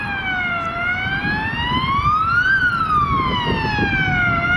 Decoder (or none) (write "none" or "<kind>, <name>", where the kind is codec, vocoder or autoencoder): none